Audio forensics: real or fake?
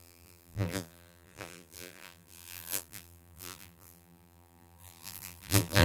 fake